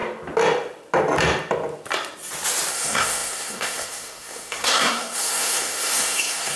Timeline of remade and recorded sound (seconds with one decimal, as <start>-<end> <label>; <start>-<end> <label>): 0.0-2.7 recorded; 2.7-6.6 remade